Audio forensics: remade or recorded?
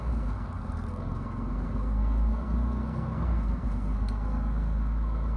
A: remade